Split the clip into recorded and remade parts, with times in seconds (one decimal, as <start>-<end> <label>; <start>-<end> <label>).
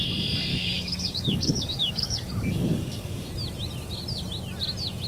0.0-0.5 recorded; 0.5-3.3 remade; 3.3-5.1 recorded